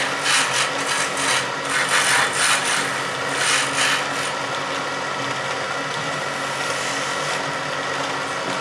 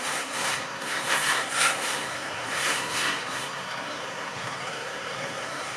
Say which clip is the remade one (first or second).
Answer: second